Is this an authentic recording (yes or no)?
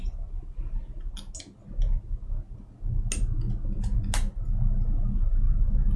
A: yes